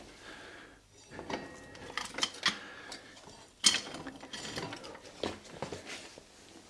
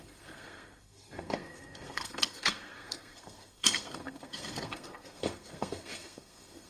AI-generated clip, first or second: second